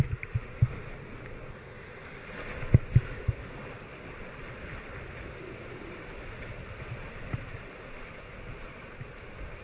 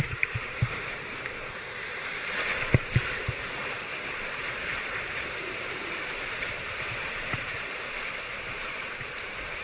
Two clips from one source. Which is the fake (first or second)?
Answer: second